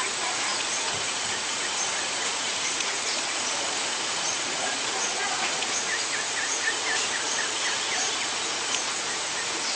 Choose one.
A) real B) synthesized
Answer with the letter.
B